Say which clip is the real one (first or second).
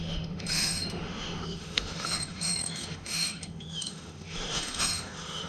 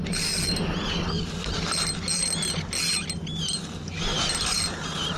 second